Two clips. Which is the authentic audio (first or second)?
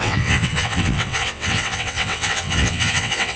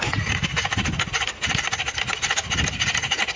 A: second